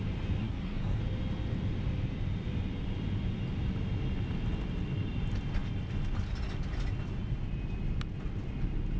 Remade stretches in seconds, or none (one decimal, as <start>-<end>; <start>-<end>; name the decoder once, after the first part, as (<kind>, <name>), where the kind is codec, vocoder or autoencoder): 0.4-1.0 (codec, SNAC)